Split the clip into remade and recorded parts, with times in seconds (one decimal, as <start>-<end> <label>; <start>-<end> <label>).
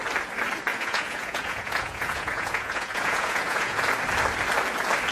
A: 0.0-0.7 recorded; 0.7-3.8 remade; 3.8-5.1 recorded